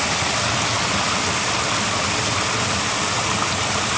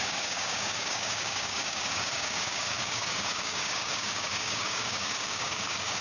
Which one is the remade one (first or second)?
second